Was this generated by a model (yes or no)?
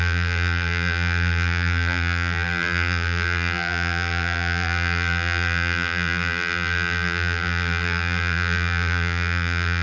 yes